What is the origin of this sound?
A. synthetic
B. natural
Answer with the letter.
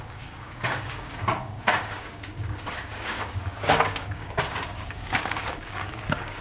A